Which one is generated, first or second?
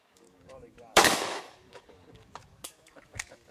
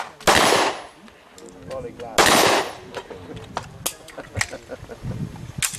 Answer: first